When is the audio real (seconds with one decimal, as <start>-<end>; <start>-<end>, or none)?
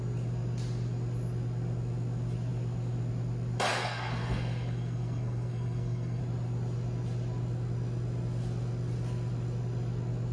0.0-3.7; 6.2-10.3